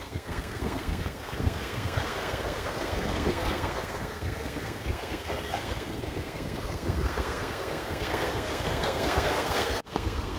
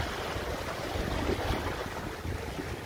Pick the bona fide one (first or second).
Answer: second